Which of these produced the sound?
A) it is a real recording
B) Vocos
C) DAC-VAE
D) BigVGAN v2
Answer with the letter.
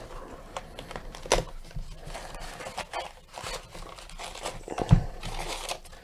A